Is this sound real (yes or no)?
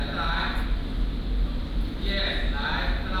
yes